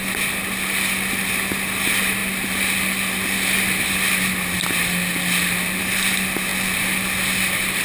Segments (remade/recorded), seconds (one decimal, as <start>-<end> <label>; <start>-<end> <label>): 0.0-7.8 recorded

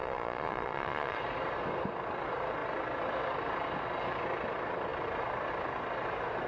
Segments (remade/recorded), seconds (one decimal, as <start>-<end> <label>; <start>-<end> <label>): 0.0-1.2 remade; 1.2-6.5 recorded

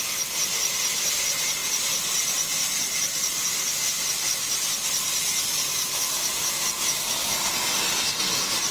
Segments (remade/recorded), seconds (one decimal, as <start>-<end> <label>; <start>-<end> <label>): 0.0-8.7 recorded

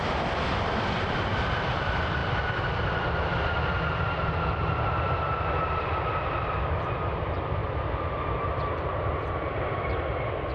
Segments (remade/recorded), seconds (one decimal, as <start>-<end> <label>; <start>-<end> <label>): 0.0-2.2 remade; 2.2-7.0 recorded; 7.0-10.5 remade

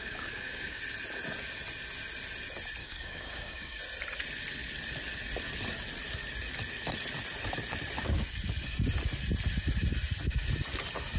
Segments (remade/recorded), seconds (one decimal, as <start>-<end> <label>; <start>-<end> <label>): 0.0-0.8 remade; 0.8-2.8 recorded; 2.8-3.8 remade; 3.8-11.2 recorded

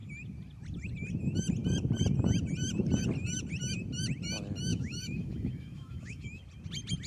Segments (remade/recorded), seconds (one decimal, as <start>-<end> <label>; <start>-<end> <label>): 0.0-4.7 recorded; 4.7-6.4 remade; 6.4-7.1 recorded

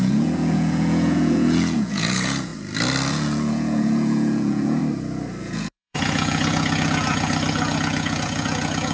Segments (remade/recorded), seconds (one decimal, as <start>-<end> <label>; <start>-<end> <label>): 0.0-2.5 remade; 2.5-3.1 recorded; 3.1-4.8 remade; 4.8-5.4 recorded; 5.4-8.9 remade